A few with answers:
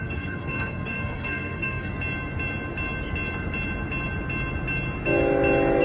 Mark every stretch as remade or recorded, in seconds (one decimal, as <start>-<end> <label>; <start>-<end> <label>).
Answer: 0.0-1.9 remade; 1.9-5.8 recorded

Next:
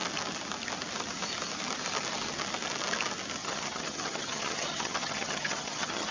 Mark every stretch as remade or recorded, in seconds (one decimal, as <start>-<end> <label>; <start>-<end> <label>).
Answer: 0.0-3.4 recorded; 3.4-6.1 remade

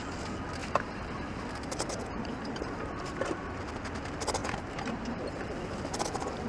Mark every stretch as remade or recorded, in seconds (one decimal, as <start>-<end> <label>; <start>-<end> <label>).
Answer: 0.0-0.6 recorded; 0.6-3.5 remade; 3.5-4.4 recorded; 4.4-5.2 remade; 5.2-6.5 recorded

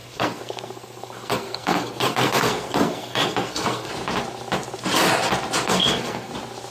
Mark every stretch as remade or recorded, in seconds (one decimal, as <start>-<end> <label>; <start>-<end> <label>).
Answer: 0.0-3.9 remade; 3.9-5.6 recorded; 5.6-6.3 remade; 6.3-6.7 recorded